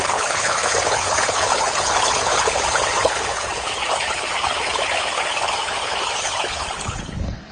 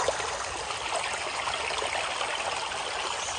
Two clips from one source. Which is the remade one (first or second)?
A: first